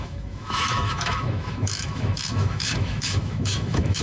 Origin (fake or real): fake